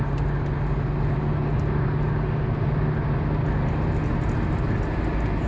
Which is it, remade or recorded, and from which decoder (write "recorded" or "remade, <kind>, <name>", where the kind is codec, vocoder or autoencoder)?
recorded